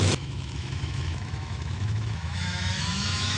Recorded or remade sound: remade